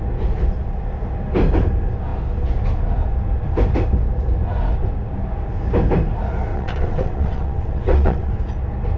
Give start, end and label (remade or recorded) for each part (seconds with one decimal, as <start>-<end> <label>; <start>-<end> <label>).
0.0-6.5 recorded; 6.5-8.3 remade; 8.3-9.0 recorded